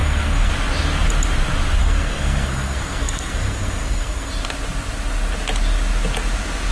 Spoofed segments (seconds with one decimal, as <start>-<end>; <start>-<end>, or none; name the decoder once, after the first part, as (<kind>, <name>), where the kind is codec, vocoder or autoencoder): 0.0-0.5 (codec, SNAC); 1.8-4.3